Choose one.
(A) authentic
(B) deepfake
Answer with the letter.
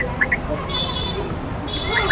A